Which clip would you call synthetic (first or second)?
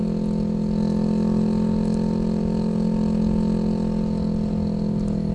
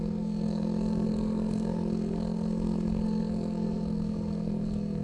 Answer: second